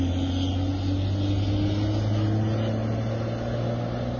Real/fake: real